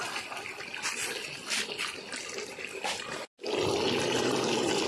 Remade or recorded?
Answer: recorded